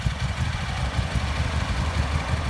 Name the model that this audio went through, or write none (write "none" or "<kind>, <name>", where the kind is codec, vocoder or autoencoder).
vocoder, Vocos